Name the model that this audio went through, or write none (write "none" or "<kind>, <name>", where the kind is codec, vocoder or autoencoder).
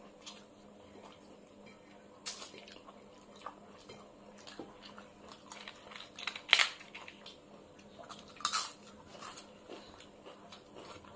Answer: none